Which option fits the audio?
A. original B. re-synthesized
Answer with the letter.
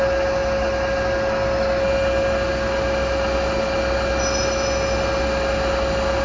A